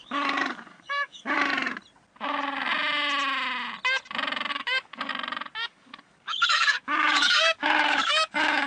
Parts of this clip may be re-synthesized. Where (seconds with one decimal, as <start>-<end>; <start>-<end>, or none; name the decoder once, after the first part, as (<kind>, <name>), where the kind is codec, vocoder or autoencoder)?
0.0-1.5 (codec, DAC); 4.5-5.1; 5.7-8.7